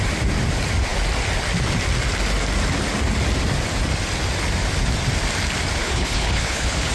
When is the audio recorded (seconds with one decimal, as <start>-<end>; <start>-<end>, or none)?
0.0-5.8